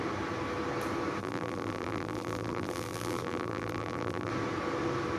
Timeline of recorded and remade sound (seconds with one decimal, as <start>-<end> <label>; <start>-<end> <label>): 0.0-1.2 recorded; 1.2-4.3 remade; 4.3-5.2 recorded